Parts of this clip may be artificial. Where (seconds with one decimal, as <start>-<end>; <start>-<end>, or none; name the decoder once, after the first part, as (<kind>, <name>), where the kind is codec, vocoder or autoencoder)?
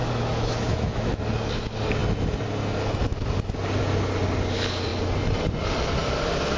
0.0-1.2 (autoencoder, DAC-VAE)